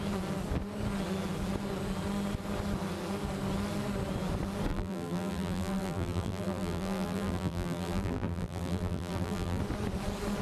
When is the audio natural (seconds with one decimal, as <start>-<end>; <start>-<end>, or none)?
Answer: 0.0-4.7; 9.6-10.4